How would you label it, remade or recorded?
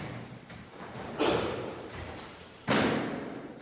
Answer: remade